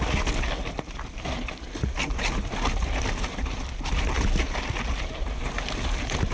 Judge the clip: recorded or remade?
recorded